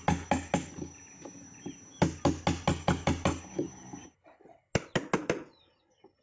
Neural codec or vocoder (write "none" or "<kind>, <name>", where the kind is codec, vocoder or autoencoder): none